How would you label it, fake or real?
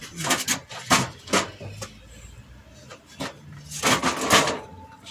real